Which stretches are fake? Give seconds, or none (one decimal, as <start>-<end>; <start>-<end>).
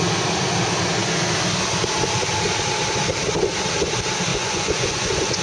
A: 4.3-5.4